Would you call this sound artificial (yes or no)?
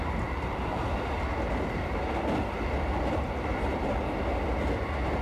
no